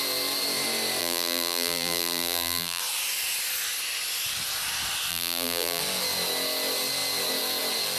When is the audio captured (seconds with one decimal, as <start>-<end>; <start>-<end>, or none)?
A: 0.0-1.0; 2.8-5.1; 5.8-8.0